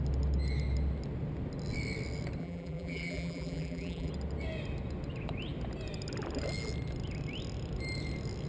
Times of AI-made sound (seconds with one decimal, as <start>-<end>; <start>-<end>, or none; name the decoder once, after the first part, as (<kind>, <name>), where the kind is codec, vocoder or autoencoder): 2.4-4.1 (vocoder, BigVGAN v2)